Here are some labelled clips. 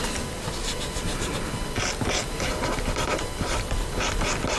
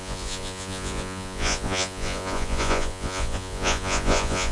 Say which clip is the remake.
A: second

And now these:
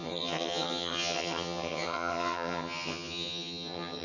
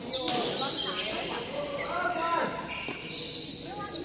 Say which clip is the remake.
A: first